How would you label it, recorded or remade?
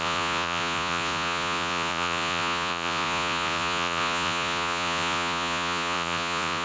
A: remade